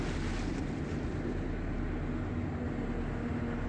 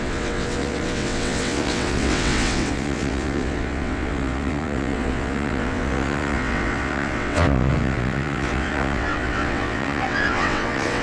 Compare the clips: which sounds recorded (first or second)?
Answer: first